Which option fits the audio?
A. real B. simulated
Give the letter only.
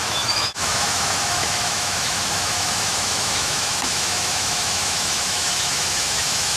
B